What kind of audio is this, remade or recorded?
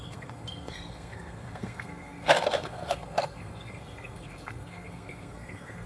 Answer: remade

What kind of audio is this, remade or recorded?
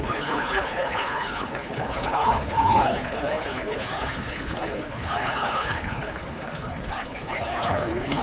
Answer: remade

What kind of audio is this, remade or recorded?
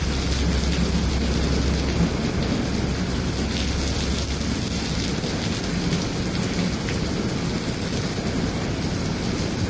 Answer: recorded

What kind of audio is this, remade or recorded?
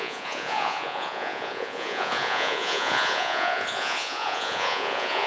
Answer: remade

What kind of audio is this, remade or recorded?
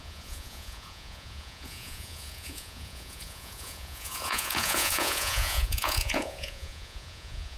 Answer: remade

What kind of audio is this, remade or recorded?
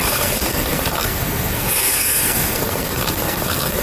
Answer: remade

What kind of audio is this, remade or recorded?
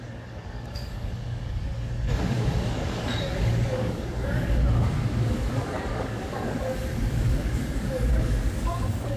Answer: remade